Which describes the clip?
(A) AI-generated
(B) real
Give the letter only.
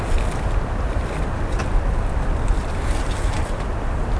B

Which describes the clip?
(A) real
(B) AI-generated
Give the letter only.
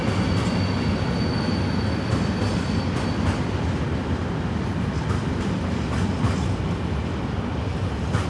A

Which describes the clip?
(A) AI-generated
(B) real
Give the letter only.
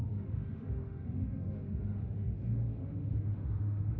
A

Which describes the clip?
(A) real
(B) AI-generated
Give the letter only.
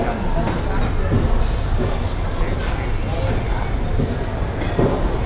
A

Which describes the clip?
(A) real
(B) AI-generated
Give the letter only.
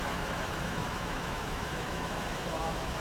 B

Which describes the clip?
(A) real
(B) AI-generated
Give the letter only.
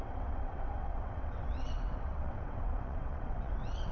B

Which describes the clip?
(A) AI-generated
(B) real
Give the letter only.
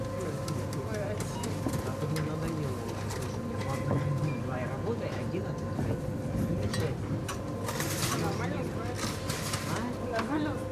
B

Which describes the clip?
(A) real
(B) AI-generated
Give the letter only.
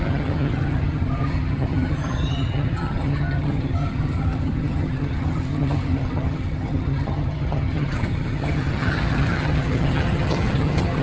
B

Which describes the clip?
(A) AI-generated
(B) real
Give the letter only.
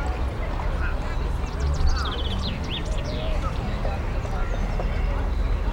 B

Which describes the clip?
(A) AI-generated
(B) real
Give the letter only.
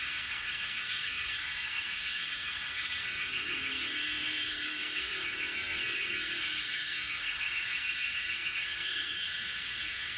A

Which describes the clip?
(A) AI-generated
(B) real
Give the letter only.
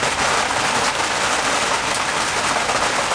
B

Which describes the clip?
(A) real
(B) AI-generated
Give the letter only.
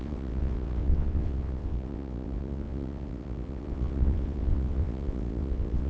B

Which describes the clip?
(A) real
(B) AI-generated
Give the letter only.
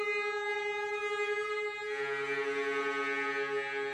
A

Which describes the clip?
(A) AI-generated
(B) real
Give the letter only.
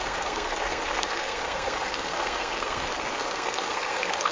A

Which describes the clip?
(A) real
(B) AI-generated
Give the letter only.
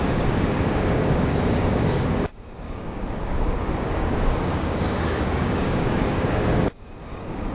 B